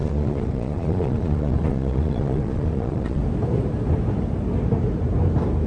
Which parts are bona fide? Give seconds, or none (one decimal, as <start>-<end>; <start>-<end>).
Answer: 3.2-5.7